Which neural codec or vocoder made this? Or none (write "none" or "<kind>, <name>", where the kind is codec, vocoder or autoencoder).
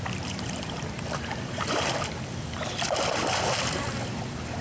vocoder, BigVGAN v2